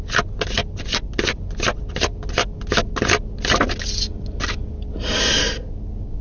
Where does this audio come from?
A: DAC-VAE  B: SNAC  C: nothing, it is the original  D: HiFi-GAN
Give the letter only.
C